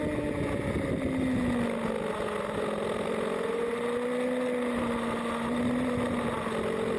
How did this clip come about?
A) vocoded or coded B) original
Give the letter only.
B